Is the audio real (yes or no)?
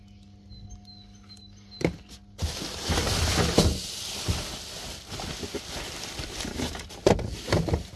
yes